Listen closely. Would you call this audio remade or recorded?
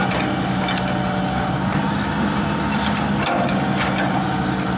recorded